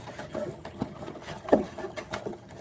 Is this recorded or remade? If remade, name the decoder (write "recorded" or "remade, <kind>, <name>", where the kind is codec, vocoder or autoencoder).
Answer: remade, vocoder, HiFi-GAN